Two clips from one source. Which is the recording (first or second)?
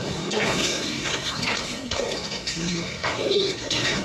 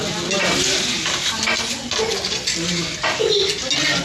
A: second